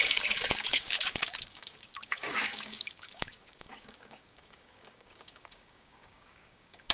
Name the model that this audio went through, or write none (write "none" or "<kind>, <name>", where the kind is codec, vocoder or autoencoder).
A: codec, DAC